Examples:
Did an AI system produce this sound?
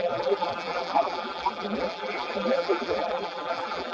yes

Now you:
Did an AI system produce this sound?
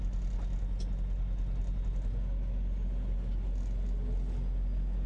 no